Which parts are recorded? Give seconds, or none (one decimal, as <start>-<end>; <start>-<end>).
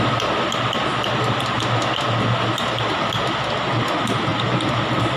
0.0-5.2